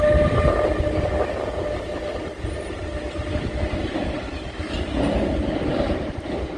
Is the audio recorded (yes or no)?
yes